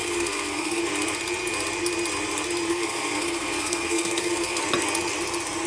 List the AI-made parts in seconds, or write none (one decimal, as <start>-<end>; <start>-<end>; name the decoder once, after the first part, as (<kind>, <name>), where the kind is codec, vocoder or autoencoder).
0.0-0.8 (codec, SNAC); 2.7-4.6